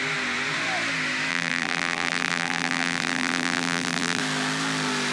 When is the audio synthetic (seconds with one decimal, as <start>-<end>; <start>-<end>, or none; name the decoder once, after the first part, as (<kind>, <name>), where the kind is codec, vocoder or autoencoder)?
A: 1.3-4.2 (vocoder, BigVGAN v2)